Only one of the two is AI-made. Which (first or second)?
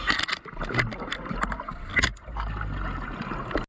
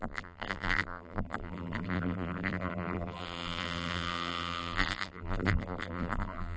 second